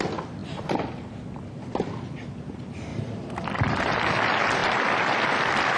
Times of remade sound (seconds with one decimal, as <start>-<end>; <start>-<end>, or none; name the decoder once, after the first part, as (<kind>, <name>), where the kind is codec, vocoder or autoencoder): 2.9-3.8 (vocoder, BigVGAN v2); 4.6-5.8